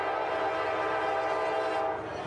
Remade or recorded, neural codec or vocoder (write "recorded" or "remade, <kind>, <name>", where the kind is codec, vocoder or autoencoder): recorded